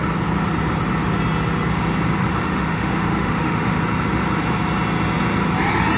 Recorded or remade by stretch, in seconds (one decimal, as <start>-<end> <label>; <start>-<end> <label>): 0.0-2.3 recorded; 2.3-3.8 remade; 3.8-6.0 recorded